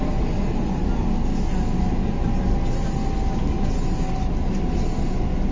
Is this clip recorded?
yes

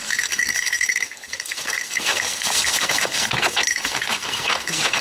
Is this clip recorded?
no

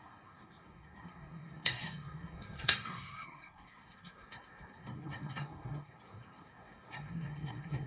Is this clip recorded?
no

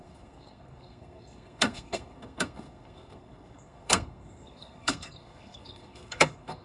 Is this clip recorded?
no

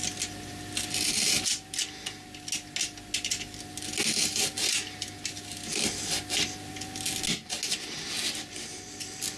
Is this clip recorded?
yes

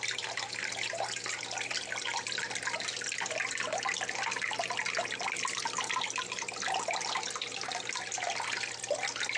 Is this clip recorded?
yes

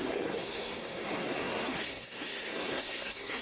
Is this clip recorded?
no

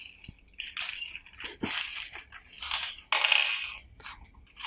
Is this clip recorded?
yes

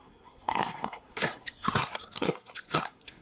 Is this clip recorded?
no